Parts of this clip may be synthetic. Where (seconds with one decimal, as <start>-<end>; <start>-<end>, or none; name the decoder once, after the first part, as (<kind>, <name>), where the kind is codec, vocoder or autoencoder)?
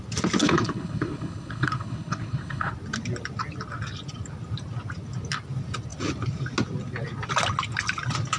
0.4-2.7 (codec, HILCodec)